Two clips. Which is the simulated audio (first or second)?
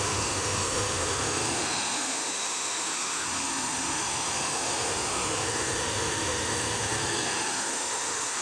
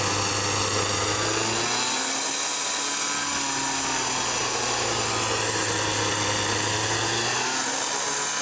first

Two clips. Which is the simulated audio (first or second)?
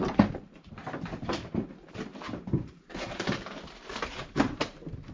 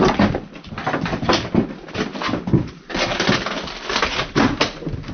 first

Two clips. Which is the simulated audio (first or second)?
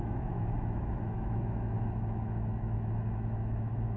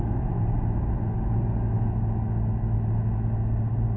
first